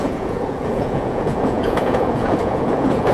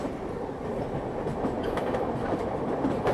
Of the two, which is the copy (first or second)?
first